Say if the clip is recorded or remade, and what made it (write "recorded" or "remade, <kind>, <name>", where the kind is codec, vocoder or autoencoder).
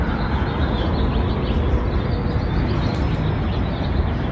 recorded